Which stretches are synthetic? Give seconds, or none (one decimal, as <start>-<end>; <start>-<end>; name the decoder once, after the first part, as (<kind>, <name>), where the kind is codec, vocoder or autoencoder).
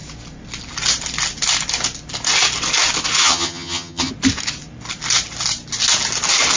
3.2-4.1 (vocoder, HiFi-GAN)